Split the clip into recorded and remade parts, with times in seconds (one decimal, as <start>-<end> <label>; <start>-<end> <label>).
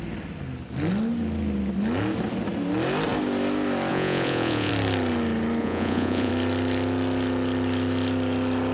0.0-3.9 recorded; 3.9-4.7 remade; 4.7-5.6 recorded; 5.6-6.3 remade; 6.3-8.7 recorded